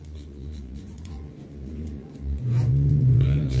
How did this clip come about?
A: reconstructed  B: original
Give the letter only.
A